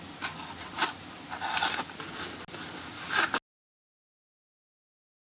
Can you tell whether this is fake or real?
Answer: real